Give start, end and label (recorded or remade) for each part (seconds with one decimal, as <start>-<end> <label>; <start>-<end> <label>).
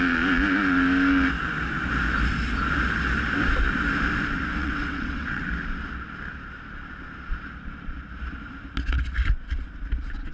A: 0.0-4.6 recorded; 4.6-5.4 remade; 5.4-10.3 recorded